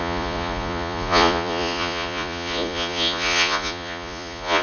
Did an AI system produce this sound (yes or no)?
yes